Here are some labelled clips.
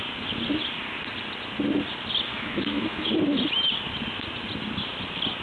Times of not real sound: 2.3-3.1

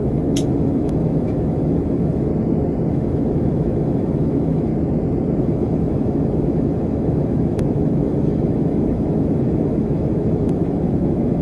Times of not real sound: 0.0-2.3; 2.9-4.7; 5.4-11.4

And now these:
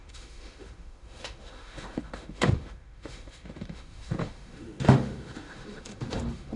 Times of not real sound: 0.0-6.6